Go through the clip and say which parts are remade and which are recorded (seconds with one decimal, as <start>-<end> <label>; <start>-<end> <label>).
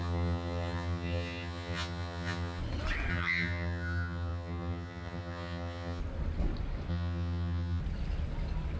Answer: 0.0-2.6 remade; 2.6-3.1 recorded; 3.1-6.0 remade; 6.0-6.9 recorded; 6.9-7.8 remade; 7.8-8.8 recorded